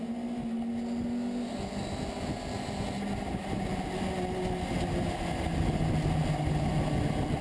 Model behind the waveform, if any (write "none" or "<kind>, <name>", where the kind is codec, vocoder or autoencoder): none